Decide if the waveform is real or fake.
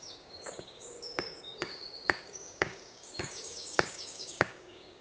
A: fake